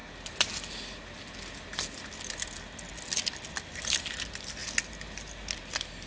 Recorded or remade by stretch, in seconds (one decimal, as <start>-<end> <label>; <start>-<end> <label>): 0.0-6.1 recorded